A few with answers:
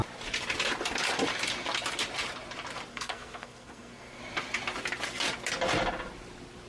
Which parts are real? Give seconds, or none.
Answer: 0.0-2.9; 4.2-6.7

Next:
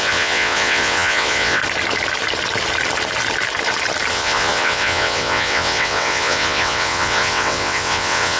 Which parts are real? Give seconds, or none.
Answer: 1.6-4.1

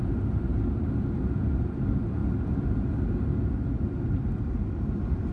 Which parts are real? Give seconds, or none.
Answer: 0.5-1.2; 2.2-4.3